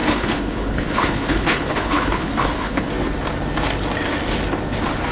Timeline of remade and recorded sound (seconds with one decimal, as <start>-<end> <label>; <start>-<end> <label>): 0.0-2.9 remade; 2.9-5.1 recorded